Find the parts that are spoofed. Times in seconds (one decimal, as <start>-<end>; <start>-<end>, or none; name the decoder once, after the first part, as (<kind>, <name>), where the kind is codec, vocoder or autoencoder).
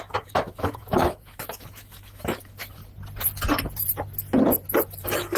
0.0-2.8 (autoencoder, DAC-VAE); 4.9-5.4